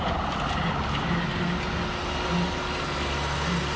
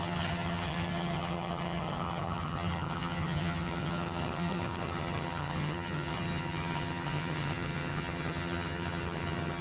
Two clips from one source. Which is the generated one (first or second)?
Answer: second